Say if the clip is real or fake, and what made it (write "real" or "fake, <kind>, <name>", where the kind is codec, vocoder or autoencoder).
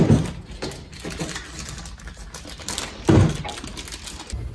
real